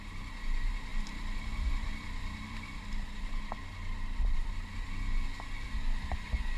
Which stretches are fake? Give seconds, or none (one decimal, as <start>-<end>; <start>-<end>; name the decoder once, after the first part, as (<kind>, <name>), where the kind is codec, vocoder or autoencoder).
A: 0.9-4.5 (vocoder, BigVGAN v2)